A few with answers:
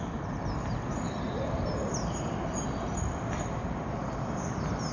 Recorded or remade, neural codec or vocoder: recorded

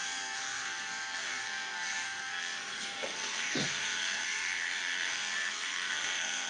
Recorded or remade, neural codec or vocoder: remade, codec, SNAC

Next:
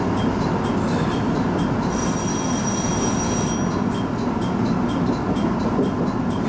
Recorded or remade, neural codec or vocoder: recorded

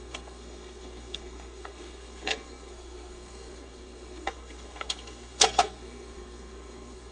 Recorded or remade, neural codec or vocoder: remade, codec, SNAC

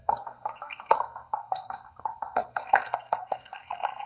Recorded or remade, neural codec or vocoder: remade, codec, SNAC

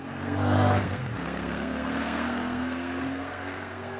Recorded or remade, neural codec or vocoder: remade, codec, SNAC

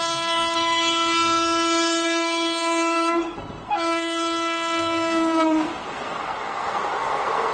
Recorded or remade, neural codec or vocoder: remade, codec, SNAC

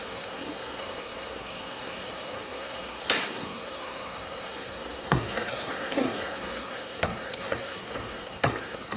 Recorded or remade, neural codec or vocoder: remade, codec, SNAC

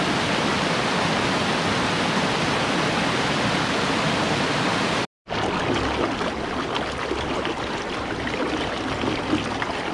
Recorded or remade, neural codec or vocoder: recorded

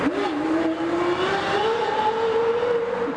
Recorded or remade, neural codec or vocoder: recorded